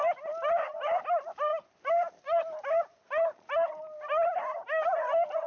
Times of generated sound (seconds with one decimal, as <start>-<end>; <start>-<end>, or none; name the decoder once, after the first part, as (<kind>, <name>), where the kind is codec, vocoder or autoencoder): 1.5-3.8 (vocoder, BigVGAN v2)